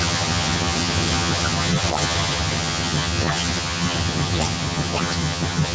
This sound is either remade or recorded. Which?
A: remade